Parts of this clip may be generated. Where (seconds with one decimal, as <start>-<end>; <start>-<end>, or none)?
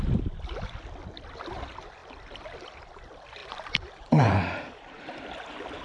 3.4-5.2